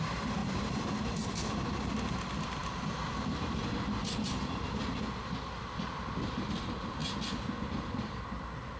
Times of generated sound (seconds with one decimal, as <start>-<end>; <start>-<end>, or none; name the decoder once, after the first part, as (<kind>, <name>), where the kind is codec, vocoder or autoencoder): none